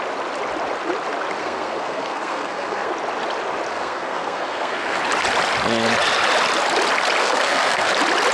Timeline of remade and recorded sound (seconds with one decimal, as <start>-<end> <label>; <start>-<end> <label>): 0.0-1.4 recorded; 1.4-2.9 remade; 2.9-3.7 recorded; 3.7-5.0 remade; 5.0-7.2 recorded; 7.2-7.9 remade; 7.9-8.3 recorded

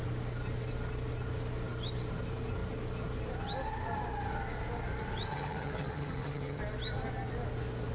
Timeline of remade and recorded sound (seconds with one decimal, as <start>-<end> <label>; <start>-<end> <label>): 0.0-5.3 recorded; 5.3-6.6 remade; 6.6-7.9 recorded

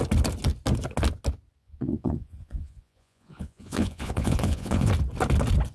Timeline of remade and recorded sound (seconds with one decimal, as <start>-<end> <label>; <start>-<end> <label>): 0.0-1.6 recorded; 1.6-4.9 remade; 4.9-5.7 recorded

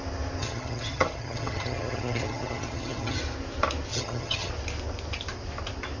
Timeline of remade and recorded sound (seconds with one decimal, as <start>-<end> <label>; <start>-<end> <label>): 0.0-0.4 recorded; 0.4-3.2 remade; 3.2-3.9 recorded; 3.9-4.5 remade; 4.5-6.0 recorded